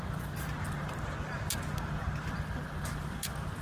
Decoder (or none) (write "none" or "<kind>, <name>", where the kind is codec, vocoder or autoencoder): none